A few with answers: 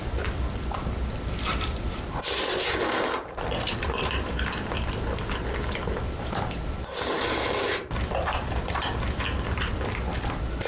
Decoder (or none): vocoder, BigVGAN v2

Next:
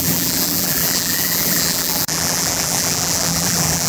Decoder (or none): vocoder, BigVGAN v2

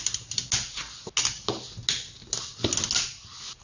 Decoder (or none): none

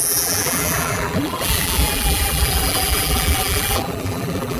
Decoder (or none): vocoder, BigVGAN v2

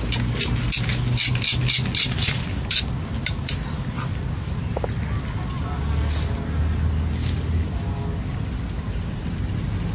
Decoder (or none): none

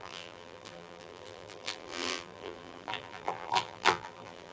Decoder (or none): vocoder, BigVGAN v2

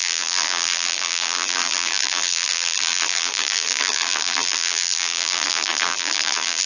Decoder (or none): vocoder, BigVGAN v2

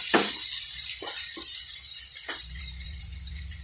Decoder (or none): vocoder, BigVGAN v2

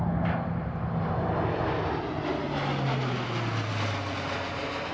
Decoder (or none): none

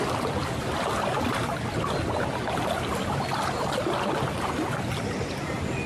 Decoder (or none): none